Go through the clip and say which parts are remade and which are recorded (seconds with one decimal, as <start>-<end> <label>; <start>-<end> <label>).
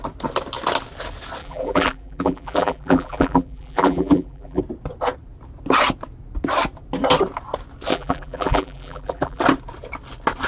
0.0-1.4 recorded; 1.4-4.6 remade; 4.6-7.9 recorded; 7.9-9.4 remade; 9.4-10.5 recorded